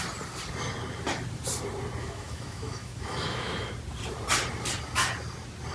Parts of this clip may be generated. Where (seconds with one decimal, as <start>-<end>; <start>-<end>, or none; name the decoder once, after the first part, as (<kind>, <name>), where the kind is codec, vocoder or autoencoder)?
2.0-3.7 (autoencoder, DAC-VAE)